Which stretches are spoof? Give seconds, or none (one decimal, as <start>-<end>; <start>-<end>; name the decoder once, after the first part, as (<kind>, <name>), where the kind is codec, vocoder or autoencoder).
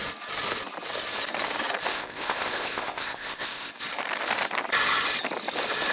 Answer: 1.9-3.7 (codec, ZipCodec)